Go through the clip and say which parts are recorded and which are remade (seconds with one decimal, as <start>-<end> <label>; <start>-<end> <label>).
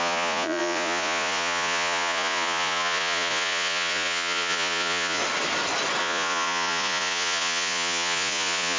0.0-5.2 remade; 5.2-6.0 recorded; 6.0-8.8 remade